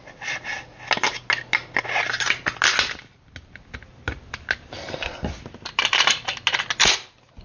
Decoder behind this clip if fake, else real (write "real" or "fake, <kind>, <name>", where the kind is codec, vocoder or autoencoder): real